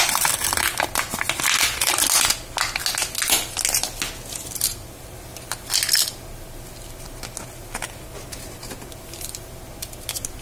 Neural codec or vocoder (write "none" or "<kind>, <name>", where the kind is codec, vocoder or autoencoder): none